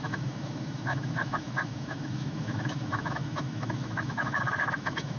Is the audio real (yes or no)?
no